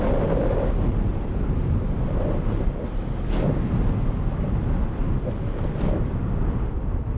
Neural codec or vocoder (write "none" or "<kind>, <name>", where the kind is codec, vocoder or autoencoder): none